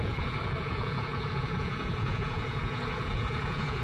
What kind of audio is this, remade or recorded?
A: remade